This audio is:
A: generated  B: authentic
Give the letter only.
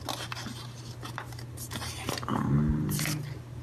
B